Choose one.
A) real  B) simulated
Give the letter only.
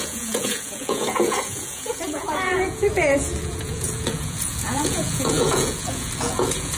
B